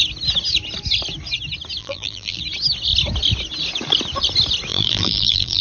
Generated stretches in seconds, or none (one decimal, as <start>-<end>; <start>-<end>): 1.8-2.4; 4.7-5.6